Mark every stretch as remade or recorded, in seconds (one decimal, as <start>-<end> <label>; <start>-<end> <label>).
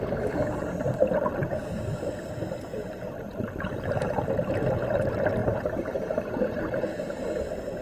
0.0-1.4 recorded; 1.4-4.2 remade; 4.2-5.4 recorded; 5.4-7.2 remade; 7.2-7.8 recorded